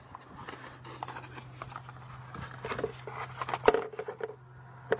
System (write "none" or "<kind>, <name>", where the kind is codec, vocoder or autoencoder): none